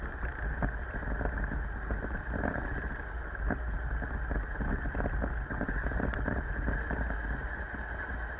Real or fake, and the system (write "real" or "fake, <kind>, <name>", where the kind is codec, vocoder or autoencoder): real